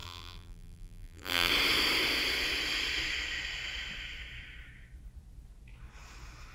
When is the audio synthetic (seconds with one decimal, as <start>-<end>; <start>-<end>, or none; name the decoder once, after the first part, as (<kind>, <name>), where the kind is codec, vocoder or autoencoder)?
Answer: 0.0-1.5 (vocoder, BigVGAN v2)